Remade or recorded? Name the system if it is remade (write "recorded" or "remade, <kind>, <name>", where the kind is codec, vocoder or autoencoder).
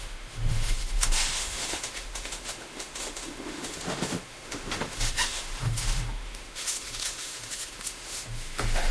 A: remade, autoencoder, DAC-VAE